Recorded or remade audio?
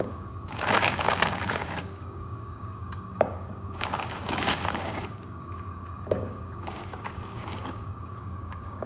remade